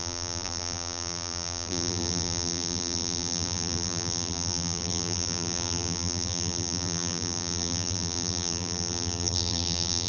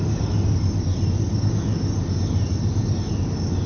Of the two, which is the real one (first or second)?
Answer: second